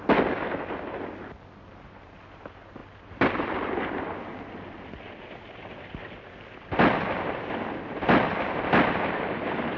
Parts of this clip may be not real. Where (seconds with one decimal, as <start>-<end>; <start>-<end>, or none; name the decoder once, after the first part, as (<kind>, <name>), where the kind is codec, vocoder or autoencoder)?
none